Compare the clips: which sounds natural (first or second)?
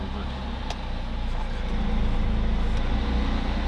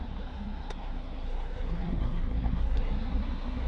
first